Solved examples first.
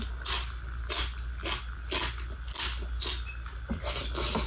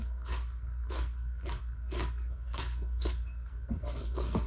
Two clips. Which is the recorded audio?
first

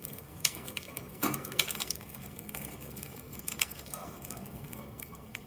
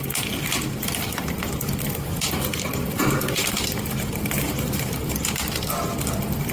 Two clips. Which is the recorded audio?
second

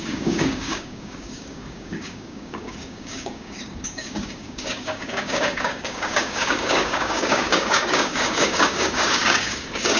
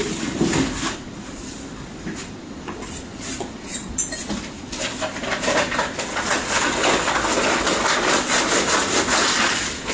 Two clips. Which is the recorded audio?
second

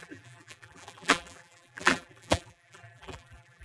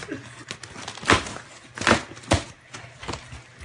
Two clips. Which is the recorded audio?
second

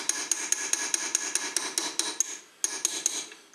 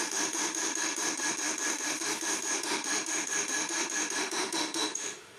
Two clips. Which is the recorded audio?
first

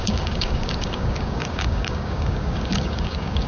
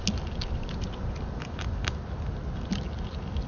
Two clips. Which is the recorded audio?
second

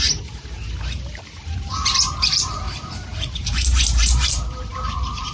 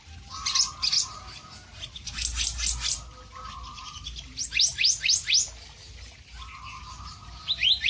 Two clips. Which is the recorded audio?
second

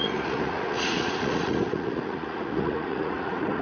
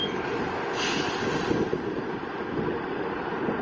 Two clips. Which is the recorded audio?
second